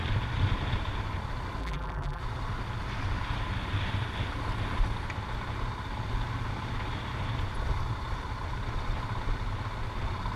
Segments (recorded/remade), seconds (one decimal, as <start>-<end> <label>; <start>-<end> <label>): 0.0-1.6 recorded; 1.6-2.2 remade; 2.2-10.4 recorded